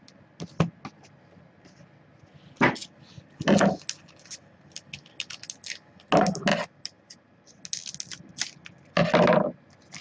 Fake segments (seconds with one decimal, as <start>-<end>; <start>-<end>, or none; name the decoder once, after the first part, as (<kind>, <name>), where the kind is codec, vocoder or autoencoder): none